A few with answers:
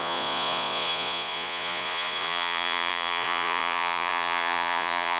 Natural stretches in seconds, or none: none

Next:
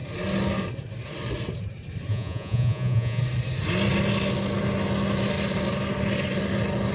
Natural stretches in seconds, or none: 0.0-2.1; 3.2-6.9

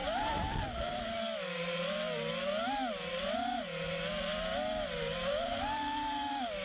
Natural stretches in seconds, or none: 0.0-6.6

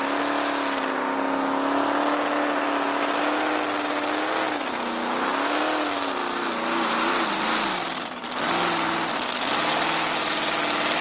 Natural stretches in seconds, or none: 0.0-11.0

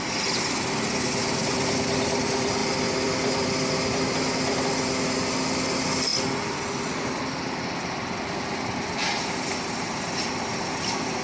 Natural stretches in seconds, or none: 0.0-11.2

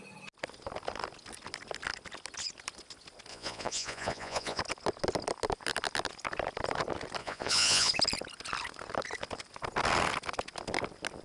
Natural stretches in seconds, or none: 0.0-3.3; 4.6-7.2; 7.9-11.2

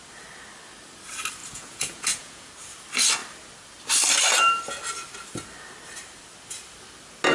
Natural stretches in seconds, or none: 0.0-1.4; 2.5-7.3